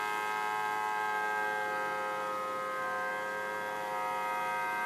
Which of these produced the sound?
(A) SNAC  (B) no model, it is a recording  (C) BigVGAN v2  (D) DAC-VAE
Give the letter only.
B